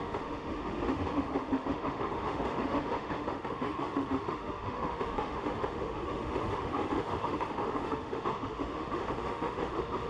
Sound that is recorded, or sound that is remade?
remade